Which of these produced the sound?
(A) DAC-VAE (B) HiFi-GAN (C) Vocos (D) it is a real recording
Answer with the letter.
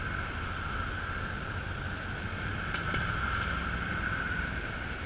D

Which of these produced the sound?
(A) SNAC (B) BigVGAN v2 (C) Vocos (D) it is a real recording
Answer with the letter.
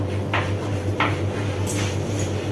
D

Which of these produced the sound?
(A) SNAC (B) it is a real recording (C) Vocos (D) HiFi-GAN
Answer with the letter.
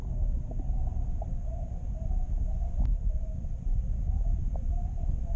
B